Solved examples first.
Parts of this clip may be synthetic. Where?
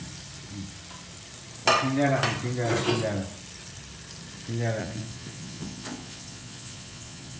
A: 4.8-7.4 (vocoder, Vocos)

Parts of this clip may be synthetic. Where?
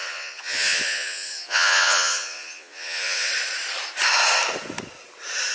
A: 0.0-3.3 (vocoder, Vocos)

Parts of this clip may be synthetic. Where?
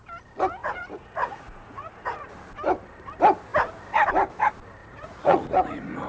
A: 0.6-2.3 (vocoder, Vocos); 4.8-6.1